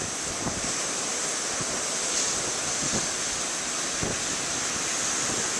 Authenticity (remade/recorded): recorded